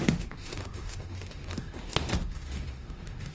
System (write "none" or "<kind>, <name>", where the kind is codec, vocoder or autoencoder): autoencoder, DAC-VAE